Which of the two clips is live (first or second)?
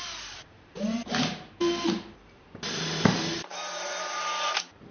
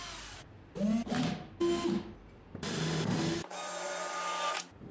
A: second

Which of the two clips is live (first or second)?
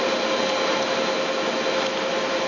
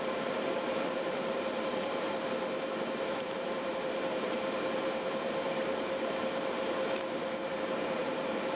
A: first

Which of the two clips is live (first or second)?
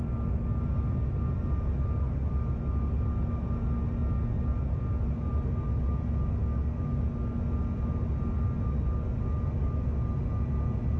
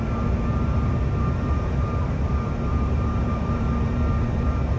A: first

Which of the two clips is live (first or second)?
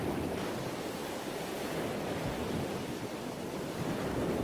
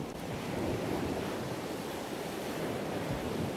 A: first